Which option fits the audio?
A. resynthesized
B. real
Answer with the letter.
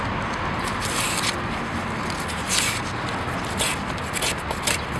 B